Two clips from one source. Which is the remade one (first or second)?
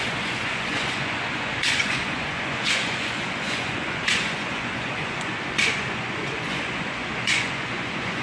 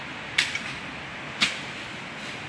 first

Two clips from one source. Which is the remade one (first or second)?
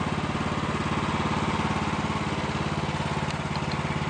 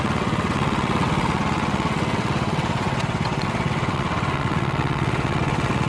second